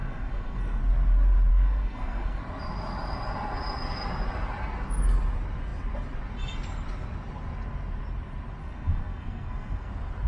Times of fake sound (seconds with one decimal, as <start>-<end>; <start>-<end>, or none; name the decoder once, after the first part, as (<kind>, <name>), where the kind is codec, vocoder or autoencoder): 0.0-0.8 (codec, SNAC); 1.5-2.4; 8.6-9.9